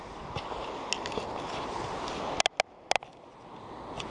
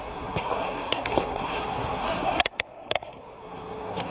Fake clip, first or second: second